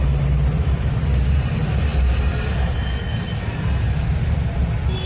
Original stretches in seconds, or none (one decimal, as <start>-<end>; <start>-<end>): 0.0-5.1